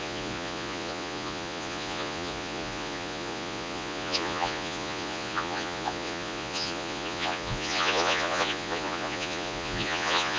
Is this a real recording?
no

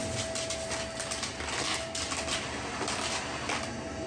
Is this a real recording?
yes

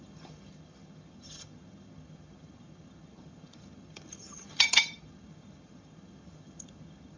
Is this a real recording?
no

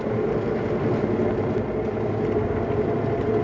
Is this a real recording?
yes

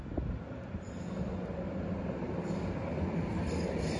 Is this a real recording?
yes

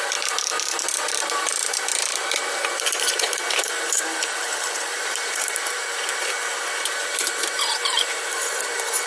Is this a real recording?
no